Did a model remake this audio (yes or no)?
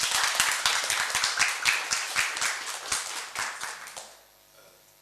no